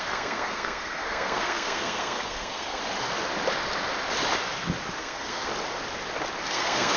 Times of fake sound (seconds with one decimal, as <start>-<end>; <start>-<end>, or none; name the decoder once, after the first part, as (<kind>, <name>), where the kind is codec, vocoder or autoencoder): 0.0-2.8 (codec, SNAC); 5.0-5.5; 6.5-7.0